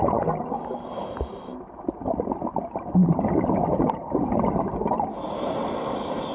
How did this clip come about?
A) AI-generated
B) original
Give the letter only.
B